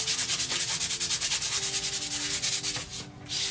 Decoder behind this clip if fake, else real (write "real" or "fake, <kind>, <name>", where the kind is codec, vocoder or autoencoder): real